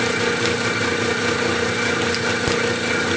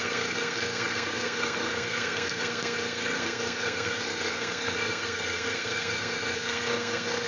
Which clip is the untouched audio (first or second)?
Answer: first